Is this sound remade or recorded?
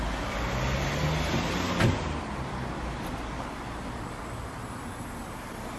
recorded